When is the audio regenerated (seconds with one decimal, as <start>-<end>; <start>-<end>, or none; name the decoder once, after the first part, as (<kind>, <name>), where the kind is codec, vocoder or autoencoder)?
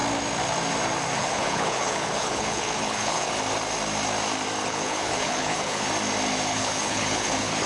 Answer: 1.2-3.3 (codec, HILCodec); 4.6-5.9; 6.5-7.7